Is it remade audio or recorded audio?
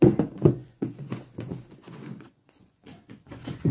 remade